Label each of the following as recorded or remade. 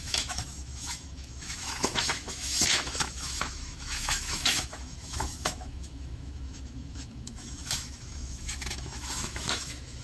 remade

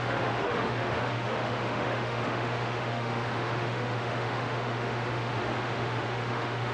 remade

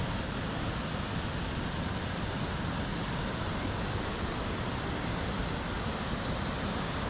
recorded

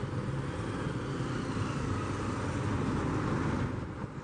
recorded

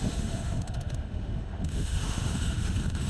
remade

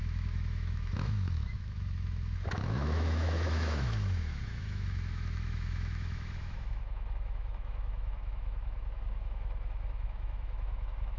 remade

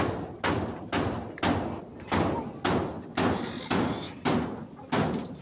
recorded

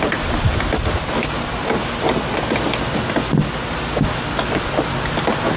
recorded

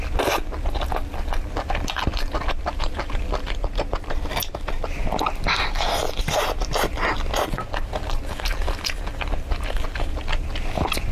recorded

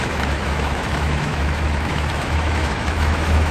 remade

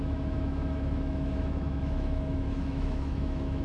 remade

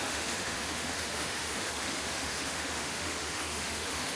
remade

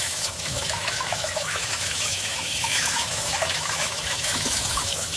remade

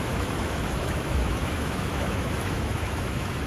remade